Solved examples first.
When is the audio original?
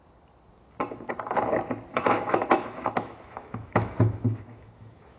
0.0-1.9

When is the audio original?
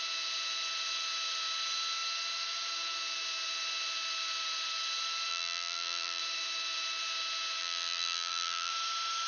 0.0-5.3; 6.2-7.6; 8.7-9.3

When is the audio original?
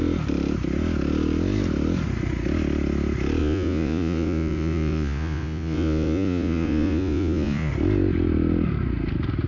0.0-3.4; 7.7-9.5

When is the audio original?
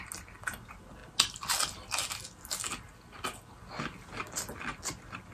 0.0-5.3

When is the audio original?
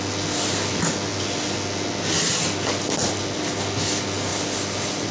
0.0-4.3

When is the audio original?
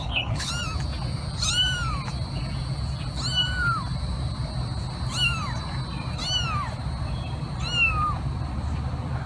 0.5-9.3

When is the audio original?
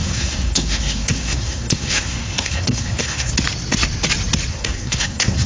3.3-4.5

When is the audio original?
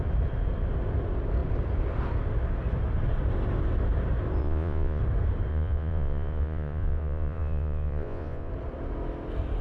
0.0-4.4; 5.0-5.5; 8.5-9.6